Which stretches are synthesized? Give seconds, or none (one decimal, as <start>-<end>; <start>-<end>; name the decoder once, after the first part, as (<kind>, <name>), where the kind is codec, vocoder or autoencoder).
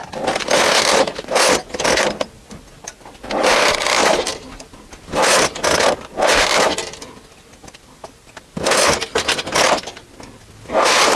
none